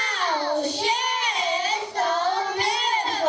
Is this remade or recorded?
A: remade